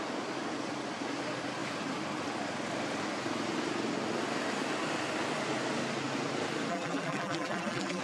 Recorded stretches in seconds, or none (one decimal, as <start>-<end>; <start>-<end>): 0.0-6.7

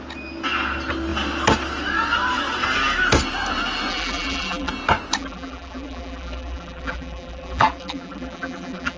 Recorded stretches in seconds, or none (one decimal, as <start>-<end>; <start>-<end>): 0.0-3.9; 4.7-5.2

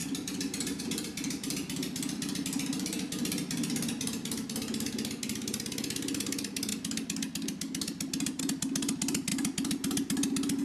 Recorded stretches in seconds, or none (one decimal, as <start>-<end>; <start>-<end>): 0.8-6.7; 8.4-10.6

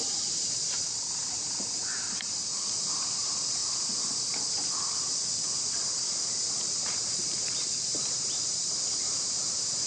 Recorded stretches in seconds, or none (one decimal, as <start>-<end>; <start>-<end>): 3.6-6.5

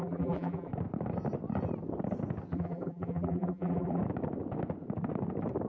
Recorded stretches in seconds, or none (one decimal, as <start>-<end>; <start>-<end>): 0.7-2.5; 4.0-5.7